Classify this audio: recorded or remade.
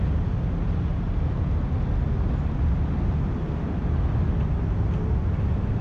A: recorded